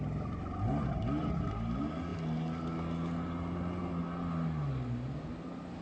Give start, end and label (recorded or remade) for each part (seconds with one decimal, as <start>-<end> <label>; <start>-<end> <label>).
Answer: 0.0-5.8 recorded